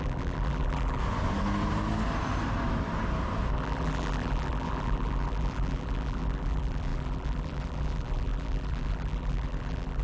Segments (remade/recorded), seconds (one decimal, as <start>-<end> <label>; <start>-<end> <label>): 0.0-1.0 remade; 1.0-3.5 recorded; 3.5-10.0 remade